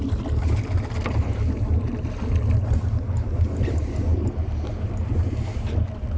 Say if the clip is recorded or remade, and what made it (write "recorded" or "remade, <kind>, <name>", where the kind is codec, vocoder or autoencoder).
recorded